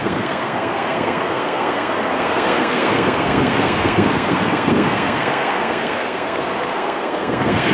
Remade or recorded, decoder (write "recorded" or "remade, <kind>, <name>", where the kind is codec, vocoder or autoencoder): remade, codec, SNAC